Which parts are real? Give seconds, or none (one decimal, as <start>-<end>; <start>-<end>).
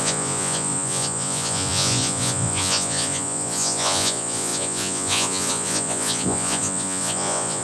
none